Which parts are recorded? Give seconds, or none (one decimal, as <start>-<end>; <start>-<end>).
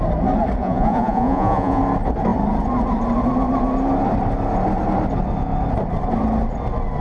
0.0-0.6; 1.8-7.0